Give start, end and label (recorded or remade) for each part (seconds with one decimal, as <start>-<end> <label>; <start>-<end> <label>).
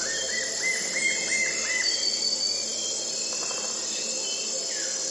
0.0-5.1 recorded